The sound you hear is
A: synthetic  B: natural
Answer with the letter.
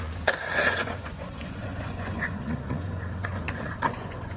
A